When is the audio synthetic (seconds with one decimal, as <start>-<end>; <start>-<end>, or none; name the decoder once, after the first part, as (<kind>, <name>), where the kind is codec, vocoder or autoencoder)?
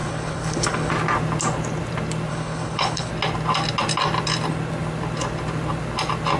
0.0-0.9 (codec, HILCodec); 2.3-3.1